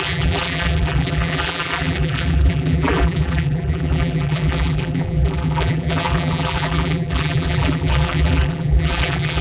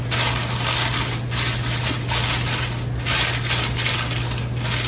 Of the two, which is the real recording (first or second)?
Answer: second